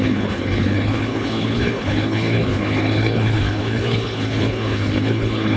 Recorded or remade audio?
remade